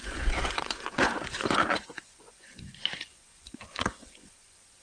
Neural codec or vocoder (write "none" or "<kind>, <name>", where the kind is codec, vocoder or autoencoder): vocoder, Vocos